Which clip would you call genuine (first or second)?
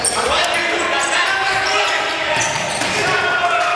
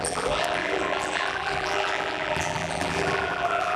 first